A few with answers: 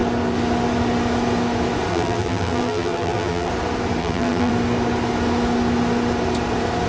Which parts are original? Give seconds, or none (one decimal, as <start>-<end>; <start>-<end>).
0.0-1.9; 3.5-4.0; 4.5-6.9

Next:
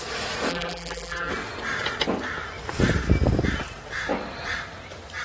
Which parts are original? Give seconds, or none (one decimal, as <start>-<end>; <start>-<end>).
0.0-0.5; 1.3-5.2

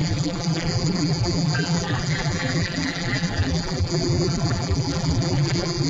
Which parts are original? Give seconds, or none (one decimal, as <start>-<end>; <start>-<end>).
none